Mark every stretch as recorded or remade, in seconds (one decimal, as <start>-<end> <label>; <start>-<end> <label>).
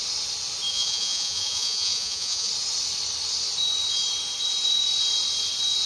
0.0-0.7 recorded; 0.7-2.5 remade; 2.5-5.9 recorded